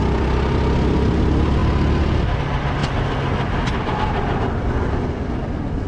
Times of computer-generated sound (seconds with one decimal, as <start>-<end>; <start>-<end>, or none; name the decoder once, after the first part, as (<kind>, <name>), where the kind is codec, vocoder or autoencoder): none